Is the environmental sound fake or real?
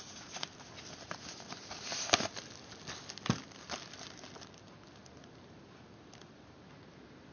real